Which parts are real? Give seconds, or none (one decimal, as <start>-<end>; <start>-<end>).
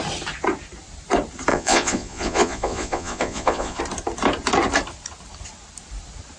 0.0-1.5; 3.8-6.4